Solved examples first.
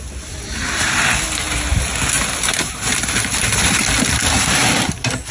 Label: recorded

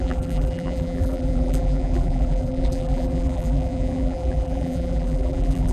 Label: remade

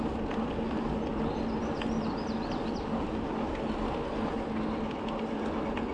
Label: recorded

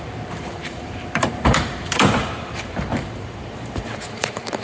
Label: remade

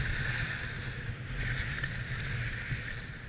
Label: recorded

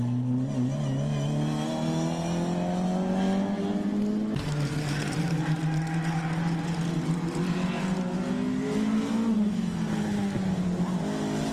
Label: recorded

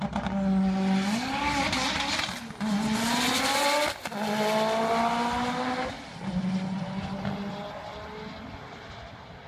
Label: recorded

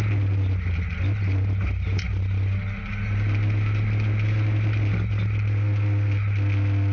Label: recorded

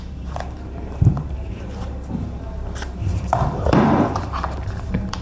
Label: remade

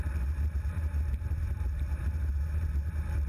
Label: remade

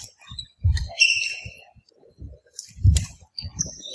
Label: recorded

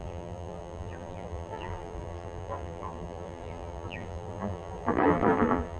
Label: remade